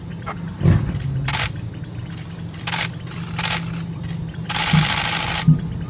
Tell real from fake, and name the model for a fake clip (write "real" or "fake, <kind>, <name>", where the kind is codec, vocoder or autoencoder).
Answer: real